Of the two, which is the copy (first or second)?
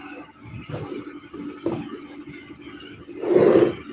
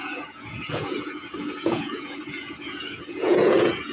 second